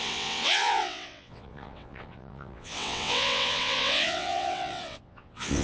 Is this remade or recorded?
remade